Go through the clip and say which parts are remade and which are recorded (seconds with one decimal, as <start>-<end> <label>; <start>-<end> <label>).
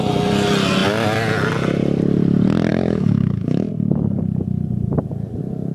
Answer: 0.0-2.7 recorded; 2.7-3.7 remade; 3.7-5.7 recorded